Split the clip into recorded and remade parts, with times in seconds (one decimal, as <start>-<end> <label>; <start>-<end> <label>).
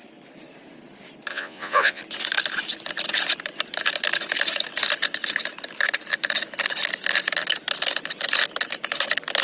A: 0.0-1.3 recorded; 1.3-2.0 remade; 2.0-9.4 recorded